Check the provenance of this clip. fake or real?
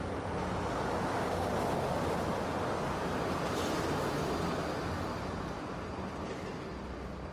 real